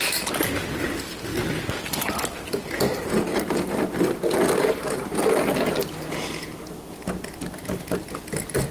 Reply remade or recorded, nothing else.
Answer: recorded